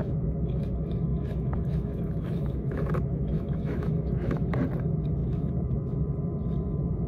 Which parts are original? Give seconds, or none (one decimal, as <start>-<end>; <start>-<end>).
0.6-1.1; 4.5-5.2; 6.0-7.1